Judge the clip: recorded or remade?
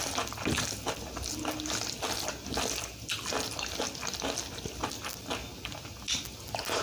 recorded